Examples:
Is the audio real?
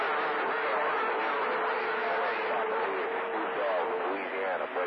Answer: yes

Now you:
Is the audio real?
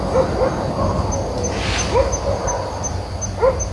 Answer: yes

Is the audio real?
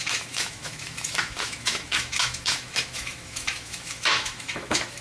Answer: no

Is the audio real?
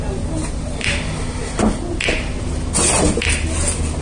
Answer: yes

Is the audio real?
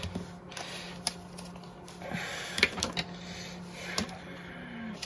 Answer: yes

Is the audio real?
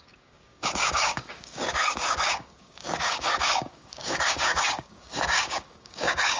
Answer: no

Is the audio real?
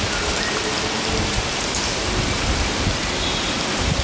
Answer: yes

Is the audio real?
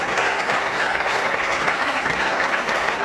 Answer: no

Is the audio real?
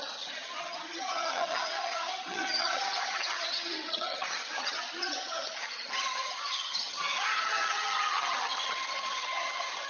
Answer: no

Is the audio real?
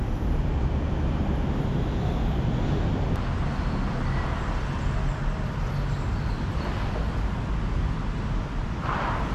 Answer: yes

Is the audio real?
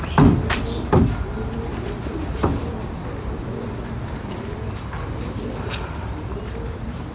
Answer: no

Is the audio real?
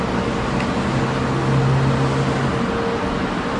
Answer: yes